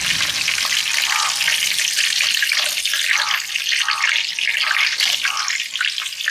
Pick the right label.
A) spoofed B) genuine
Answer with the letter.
B